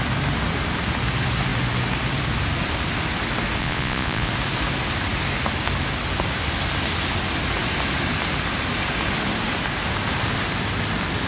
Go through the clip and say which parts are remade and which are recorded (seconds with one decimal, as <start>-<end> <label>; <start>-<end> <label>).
0.0-3.6 recorded; 3.6-4.3 remade; 4.3-11.3 recorded